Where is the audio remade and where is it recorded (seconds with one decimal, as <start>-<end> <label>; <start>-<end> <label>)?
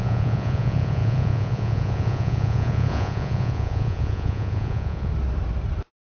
0.0-5.1 remade; 5.1-6.1 recorded